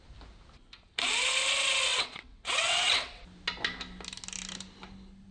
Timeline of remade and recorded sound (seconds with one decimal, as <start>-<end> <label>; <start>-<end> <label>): 0.0-1.9 recorded; 1.9-3.2 remade; 3.2-5.3 recorded

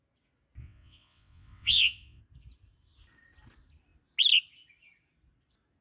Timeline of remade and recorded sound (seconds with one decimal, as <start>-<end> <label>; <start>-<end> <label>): 0.0-0.6 recorded; 0.6-2.2 remade; 2.2-5.8 recorded

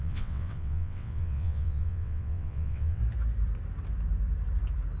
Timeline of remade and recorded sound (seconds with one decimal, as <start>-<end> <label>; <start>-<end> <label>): 0.0-3.0 remade; 3.0-5.0 recorded

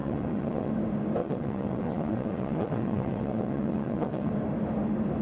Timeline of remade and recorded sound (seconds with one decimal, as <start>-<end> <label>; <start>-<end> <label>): 0.0-0.7 remade; 0.7-1.2 recorded; 1.2-4.3 remade; 4.3-5.2 recorded

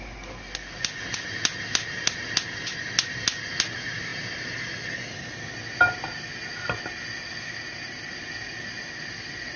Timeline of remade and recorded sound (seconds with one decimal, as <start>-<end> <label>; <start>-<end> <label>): 0.0-9.6 recorded

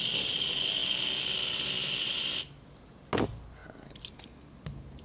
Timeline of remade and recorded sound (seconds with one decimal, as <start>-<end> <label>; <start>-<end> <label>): 0.0-5.0 recorded

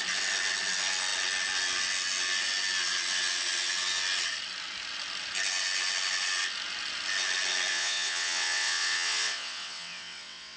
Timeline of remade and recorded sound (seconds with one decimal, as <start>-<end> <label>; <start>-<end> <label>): 0.0-7.7 recorded; 7.7-10.6 remade

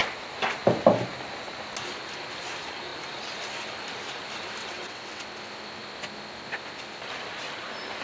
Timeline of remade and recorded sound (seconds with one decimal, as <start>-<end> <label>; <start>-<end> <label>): 0.0-4.6 recorded; 4.6-5.2 remade; 5.2-8.0 recorded